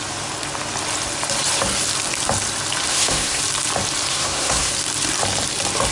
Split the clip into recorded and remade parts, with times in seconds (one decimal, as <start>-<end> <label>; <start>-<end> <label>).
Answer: 0.0-2.9 recorded; 2.9-3.4 remade; 3.4-4.1 recorded; 4.1-4.7 remade; 4.7-5.9 recorded